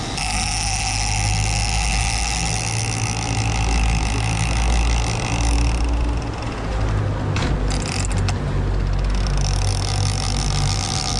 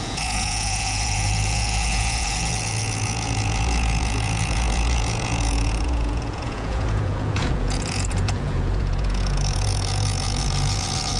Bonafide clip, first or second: first